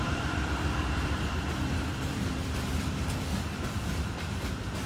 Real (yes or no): no